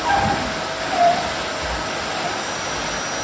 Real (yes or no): yes